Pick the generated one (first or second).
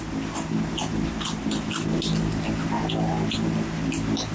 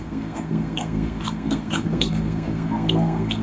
second